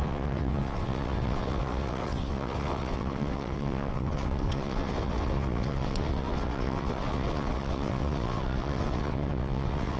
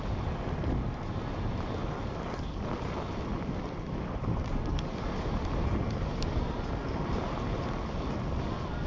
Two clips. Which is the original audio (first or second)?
second